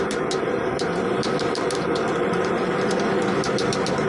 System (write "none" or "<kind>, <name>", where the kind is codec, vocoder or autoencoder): vocoder, BigVGAN v2